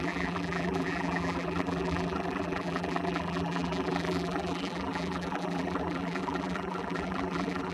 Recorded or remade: remade